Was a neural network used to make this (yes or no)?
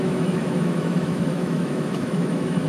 yes